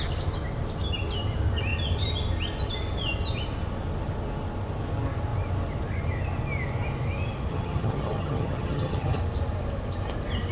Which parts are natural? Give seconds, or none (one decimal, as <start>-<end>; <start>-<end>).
0.0-7.5; 9.2-10.5